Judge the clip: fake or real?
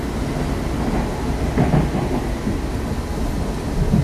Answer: real